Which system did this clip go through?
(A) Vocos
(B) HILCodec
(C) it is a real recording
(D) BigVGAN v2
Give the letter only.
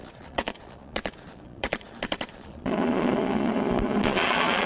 A